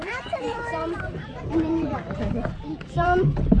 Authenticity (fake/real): fake